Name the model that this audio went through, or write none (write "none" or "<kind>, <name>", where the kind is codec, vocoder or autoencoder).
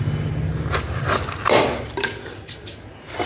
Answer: none